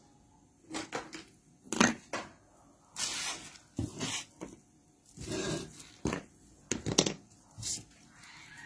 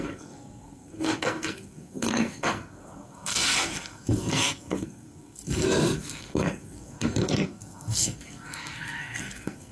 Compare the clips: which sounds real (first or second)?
first